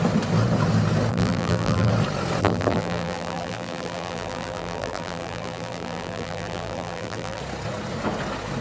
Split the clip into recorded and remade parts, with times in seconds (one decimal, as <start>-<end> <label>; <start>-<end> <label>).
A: 0.0-1.1 recorded; 1.1-1.9 remade; 1.9-2.4 recorded; 2.4-7.4 remade; 7.4-8.6 recorded